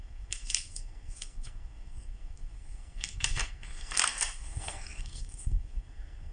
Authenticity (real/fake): fake